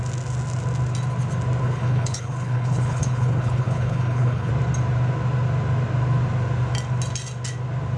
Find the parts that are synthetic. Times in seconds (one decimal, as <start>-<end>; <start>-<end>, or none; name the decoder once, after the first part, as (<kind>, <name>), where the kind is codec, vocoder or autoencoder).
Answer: 1.6-4.5 (codec, HILCodec)